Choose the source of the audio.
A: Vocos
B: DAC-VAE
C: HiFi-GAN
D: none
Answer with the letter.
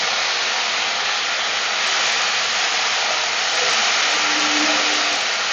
D